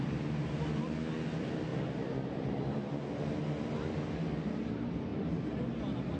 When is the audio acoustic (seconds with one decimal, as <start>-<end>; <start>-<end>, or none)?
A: 0.0-6.2